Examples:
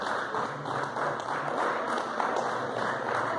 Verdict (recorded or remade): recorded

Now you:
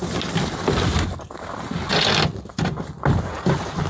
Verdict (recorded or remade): recorded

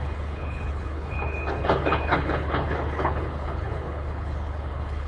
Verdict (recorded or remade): remade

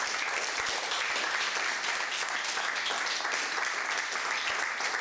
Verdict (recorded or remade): recorded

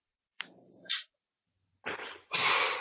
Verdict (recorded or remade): remade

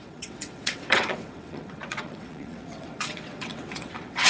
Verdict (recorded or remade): remade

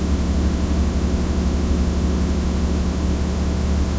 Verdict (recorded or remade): remade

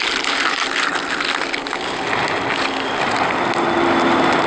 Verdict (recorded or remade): recorded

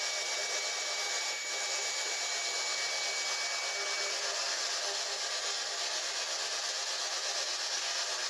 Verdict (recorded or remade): recorded